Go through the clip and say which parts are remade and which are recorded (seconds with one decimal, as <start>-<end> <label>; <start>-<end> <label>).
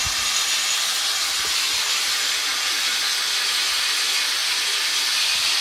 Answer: 0.0-5.6 recorded